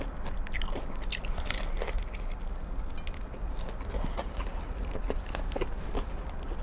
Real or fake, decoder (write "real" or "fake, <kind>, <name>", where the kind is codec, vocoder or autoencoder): real